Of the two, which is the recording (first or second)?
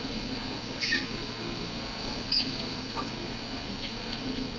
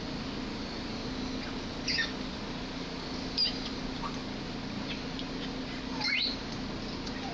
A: second